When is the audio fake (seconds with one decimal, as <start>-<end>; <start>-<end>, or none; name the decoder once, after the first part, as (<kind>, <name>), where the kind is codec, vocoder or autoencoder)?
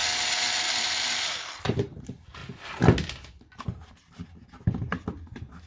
0.0-2.4 (vocoder, BigVGAN v2)